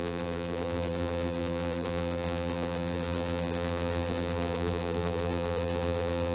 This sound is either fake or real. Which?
fake